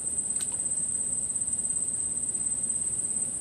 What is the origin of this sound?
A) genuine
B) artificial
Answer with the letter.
A